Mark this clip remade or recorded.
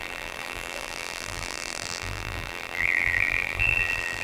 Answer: remade